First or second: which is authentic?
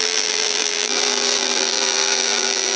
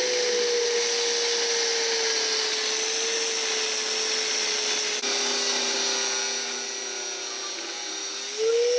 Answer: second